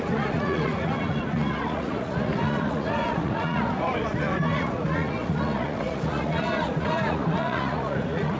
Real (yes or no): no